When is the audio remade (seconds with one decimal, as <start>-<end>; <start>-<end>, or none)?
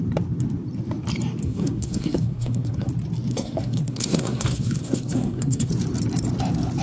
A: 1.4-2.9; 3.3-5.7